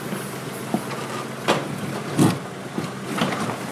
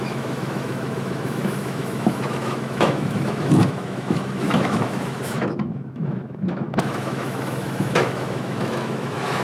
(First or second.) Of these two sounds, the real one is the first